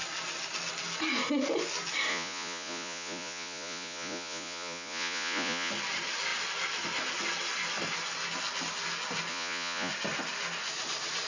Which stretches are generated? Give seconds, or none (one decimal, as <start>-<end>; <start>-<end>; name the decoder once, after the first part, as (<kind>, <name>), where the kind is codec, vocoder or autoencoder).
2.1-5.7 (vocoder, Vocos); 9.3-9.9